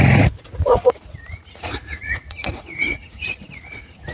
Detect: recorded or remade remade